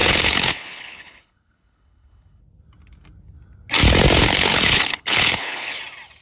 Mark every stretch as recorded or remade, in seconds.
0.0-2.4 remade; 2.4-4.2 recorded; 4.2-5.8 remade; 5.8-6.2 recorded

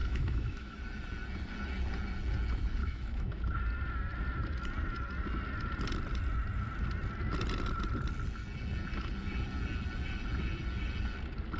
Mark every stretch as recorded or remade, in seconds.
0.0-0.8 remade; 0.8-2.8 recorded; 2.8-3.4 remade; 3.4-11.6 recorded

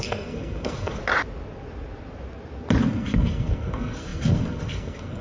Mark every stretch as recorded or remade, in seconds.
0.0-1.0 remade; 1.0-2.8 recorded; 2.8-5.2 remade

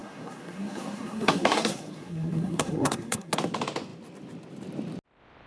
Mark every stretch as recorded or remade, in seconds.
0.0-3.3 remade; 3.3-5.5 recorded

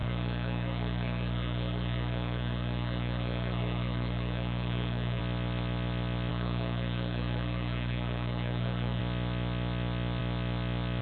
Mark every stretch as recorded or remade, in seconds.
0.0-5.2 remade; 5.2-6.3 recorded; 6.3-9.0 remade; 9.0-11.0 recorded